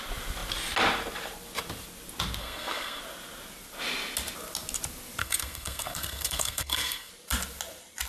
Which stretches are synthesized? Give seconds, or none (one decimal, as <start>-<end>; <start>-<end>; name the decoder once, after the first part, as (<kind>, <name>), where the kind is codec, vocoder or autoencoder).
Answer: 2.4-3.0 (codec, SNAC); 5.2-7.1